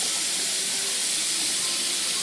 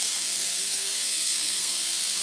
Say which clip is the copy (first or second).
second